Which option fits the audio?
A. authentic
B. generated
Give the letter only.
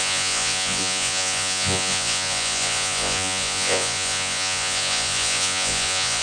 B